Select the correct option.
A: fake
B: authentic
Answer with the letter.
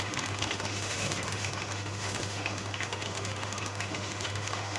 A